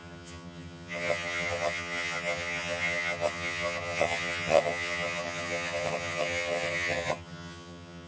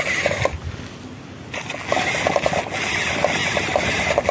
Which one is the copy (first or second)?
first